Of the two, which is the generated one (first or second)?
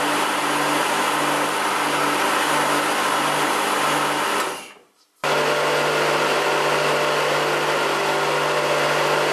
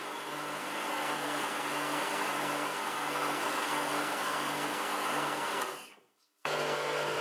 second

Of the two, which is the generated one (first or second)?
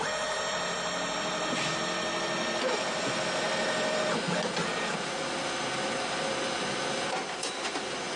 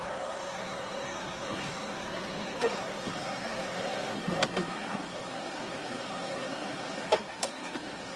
second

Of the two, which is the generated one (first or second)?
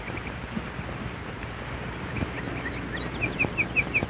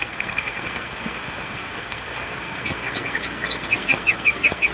second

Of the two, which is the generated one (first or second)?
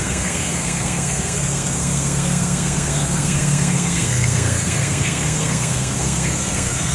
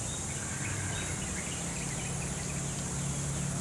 first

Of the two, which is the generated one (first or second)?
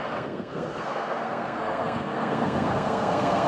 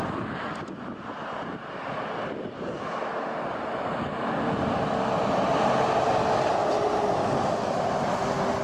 first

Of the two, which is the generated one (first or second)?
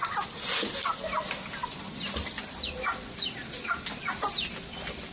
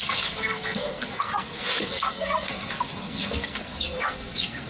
second